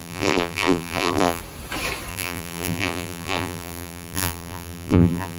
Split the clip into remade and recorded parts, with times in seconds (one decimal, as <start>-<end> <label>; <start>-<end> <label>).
0.0-1.4 remade; 1.4-2.1 recorded; 2.1-5.4 remade